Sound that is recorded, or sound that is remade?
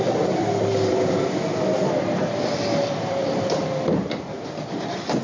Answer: remade